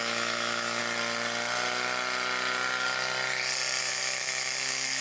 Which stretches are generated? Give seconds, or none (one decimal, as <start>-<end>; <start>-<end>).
0.0-0.8; 3.8-5.0